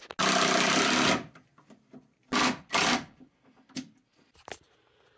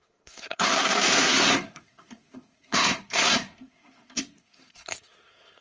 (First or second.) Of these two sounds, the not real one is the second